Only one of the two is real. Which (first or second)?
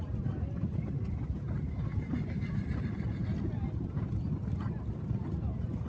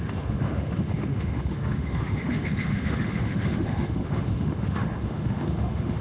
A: first